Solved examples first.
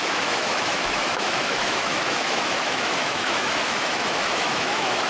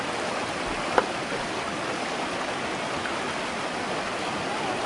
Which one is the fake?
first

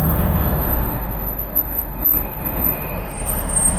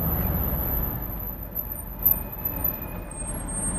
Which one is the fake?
first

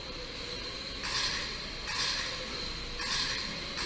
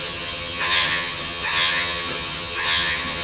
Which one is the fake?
second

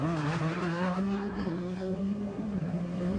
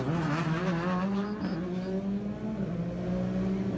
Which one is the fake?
first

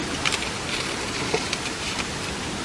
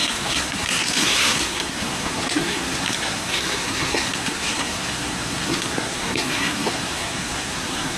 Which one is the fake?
second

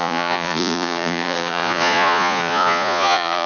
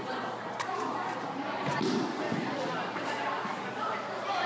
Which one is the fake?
first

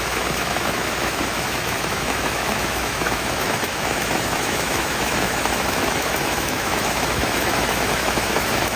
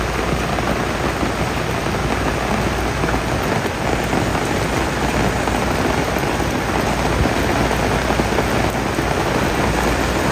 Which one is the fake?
first